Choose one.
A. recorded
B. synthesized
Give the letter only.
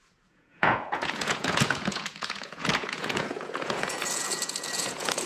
B